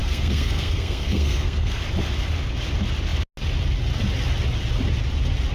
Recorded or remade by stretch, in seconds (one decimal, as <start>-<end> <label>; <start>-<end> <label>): 0.0-1.8 remade; 1.8-5.5 recorded